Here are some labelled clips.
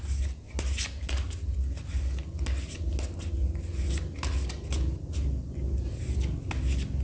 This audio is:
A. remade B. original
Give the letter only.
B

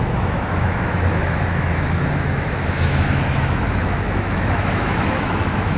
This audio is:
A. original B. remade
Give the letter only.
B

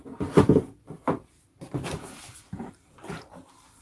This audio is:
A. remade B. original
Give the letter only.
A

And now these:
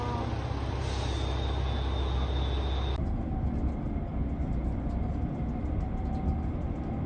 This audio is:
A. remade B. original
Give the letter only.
B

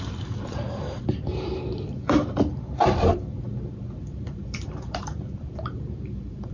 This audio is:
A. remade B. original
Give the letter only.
A